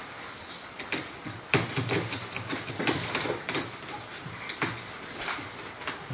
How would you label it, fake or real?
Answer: real